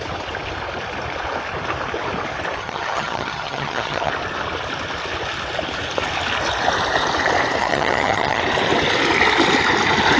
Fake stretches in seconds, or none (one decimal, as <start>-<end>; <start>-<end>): 2.6-4.1; 7.6-8.4